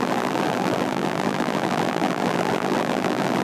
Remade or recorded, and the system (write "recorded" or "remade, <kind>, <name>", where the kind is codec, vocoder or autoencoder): remade, vocoder, BigVGAN v2